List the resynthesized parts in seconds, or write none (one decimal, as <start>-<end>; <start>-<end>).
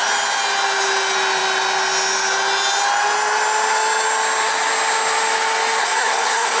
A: 5.8-6.6